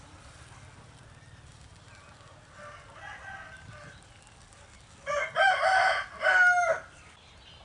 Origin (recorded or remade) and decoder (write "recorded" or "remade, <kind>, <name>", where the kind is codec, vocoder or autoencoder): recorded